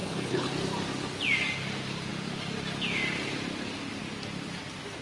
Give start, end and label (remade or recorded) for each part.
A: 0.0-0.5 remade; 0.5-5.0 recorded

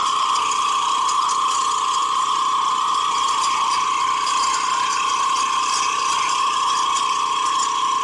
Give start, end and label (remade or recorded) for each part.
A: 0.0-1.2 remade; 1.2-2.0 recorded; 2.0-6.4 remade; 6.4-8.0 recorded

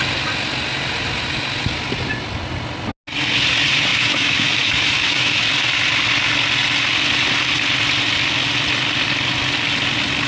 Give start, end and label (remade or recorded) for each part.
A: 0.0-3.9 recorded; 3.9-5.4 remade; 5.4-10.3 recorded

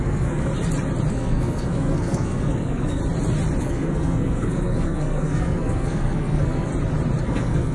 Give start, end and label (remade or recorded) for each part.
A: 0.0-0.5 remade; 0.5-1.1 recorded; 1.1-3.0 remade; 3.0-3.6 recorded; 3.6-6.7 remade; 6.7-7.2 recorded; 7.2-7.7 remade

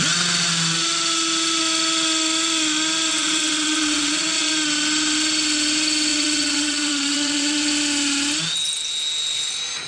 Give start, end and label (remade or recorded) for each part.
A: 0.0-3.1 recorded; 3.1-4.5 remade; 4.5-6.1 recorded; 6.1-7.7 remade; 7.7-9.9 recorded

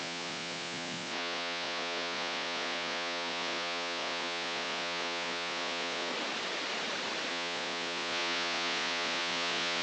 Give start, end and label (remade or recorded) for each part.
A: 0.0-6.1 remade; 6.1-7.3 recorded; 7.3-9.8 remade

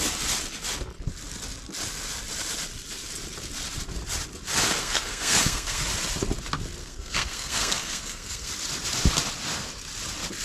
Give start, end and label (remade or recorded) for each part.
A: 0.0-4.8 recorded; 4.8-5.8 remade; 5.8-6.8 recorded; 6.8-8.5 remade; 8.5-10.4 recorded

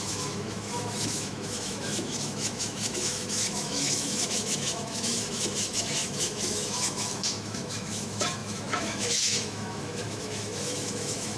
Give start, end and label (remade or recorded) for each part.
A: 0.0-11.4 remade